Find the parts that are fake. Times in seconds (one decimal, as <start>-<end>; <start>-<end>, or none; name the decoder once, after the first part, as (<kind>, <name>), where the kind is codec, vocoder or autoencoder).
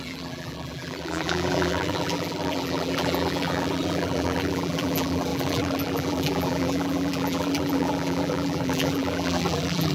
0.0-9.9 (vocoder, BigVGAN v2)